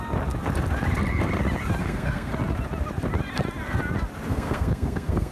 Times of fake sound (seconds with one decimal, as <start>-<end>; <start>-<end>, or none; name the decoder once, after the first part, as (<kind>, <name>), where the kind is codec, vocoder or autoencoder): 1.8-2.3 (codec, SNAC); 4.3-5.3